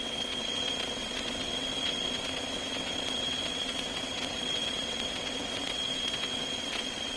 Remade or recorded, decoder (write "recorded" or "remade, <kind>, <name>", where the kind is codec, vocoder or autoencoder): remade, vocoder, WaveNeXt